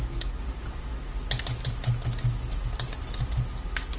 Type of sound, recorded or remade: recorded